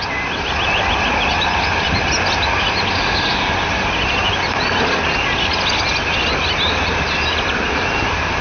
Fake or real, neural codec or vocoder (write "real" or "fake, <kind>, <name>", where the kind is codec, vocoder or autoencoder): real